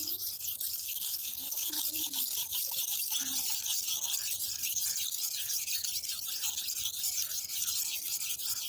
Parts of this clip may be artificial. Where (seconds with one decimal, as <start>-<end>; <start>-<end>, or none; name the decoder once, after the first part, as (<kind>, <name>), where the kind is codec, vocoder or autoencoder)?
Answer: 0.8-1.7 (codec, SNAC)